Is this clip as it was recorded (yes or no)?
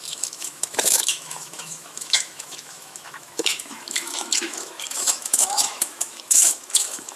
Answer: no